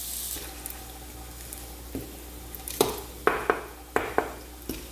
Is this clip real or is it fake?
real